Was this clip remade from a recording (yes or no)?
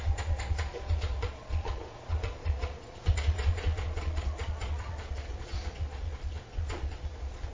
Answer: yes